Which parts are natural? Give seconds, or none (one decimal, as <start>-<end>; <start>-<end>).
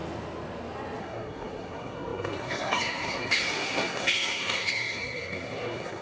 0.0-1.0